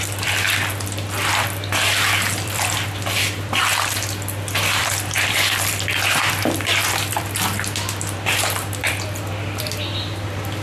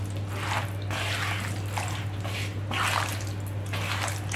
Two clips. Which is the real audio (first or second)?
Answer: second